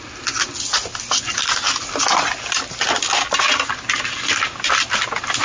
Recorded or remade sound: recorded